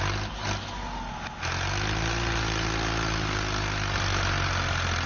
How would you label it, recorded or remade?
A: recorded